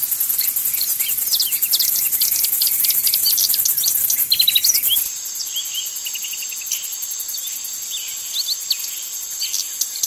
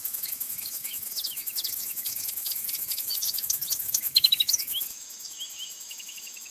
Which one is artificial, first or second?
second